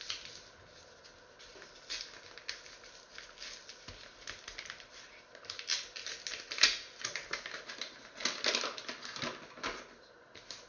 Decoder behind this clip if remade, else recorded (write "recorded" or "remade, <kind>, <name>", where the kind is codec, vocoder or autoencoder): recorded